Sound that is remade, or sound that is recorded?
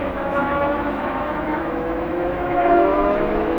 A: remade